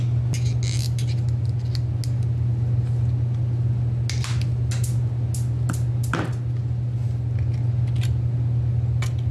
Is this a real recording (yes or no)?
yes